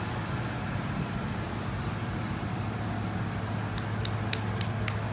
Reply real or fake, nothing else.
real